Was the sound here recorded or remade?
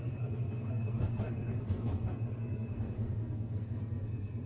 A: remade